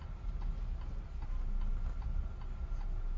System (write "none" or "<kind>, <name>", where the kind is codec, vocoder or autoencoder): none